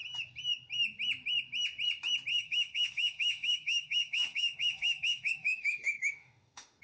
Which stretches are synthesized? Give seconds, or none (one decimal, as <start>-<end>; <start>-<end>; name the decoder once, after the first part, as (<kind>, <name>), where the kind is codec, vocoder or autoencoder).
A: 2.3-6.8 (autoencoder, DAC-VAE)